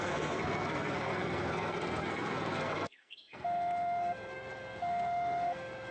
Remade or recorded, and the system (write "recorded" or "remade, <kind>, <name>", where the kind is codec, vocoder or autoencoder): remade, codec, SNAC